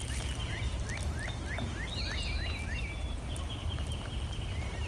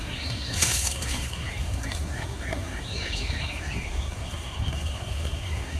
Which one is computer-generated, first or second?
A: second